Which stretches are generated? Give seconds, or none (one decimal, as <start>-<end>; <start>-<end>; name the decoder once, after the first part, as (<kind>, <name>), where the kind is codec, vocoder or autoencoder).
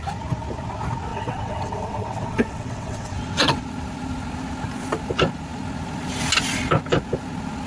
1.1-3.7 (vocoder, WaveNeXt)